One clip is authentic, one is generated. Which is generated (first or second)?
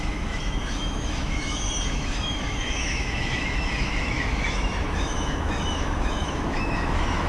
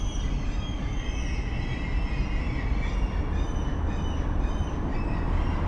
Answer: first